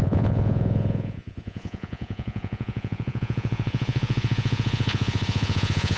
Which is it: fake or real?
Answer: fake